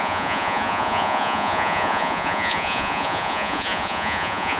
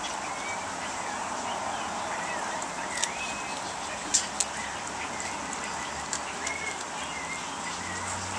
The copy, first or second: first